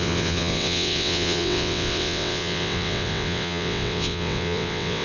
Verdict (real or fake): fake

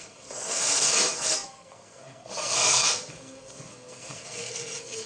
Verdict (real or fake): fake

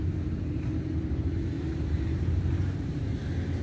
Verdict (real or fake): fake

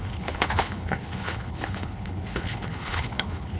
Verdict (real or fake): fake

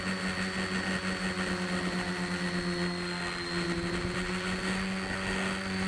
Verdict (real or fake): real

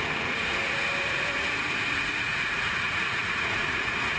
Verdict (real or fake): fake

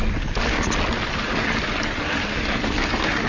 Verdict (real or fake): real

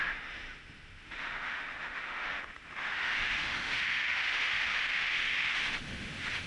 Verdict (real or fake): fake